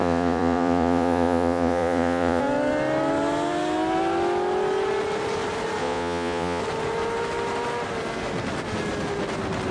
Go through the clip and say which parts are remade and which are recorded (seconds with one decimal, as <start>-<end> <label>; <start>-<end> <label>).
0.0-2.4 remade; 2.4-5.8 recorded; 5.8-6.6 remade; 6.6-9.7 recorded